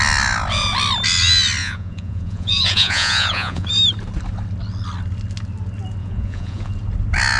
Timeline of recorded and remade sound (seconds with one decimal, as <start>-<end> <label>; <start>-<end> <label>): 0.0-1.6 recorded; 1.6-3.7 remade; 3.7-6.0 recorded; 6.0-6.7 remade; 6.7-7.4 recorded